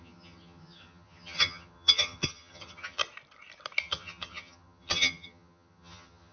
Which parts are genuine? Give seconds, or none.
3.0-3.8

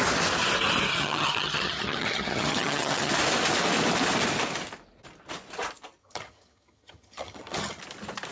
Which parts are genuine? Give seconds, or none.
0.0-0.9; 3.1-6.0; 7.8-8.3

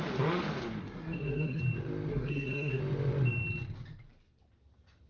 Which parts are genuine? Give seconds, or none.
0.0-0.8; 1.6-2.1; 2.8-5.1

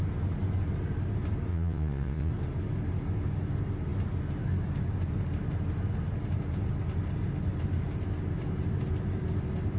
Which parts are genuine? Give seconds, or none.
0.0-1.5; 2.3-9.8

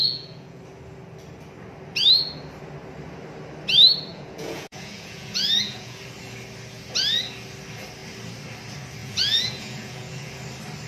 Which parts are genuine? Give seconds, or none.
0.6-4.1; 6.0-9.0; 10.3-10.9

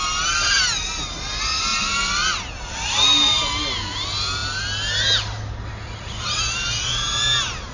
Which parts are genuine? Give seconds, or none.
0.0-7.7

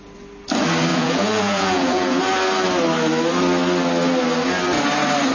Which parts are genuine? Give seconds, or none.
0.0-0.9; 2.2-5.3

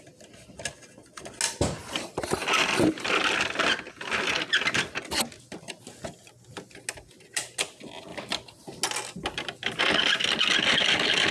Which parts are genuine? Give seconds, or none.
0.0-11.3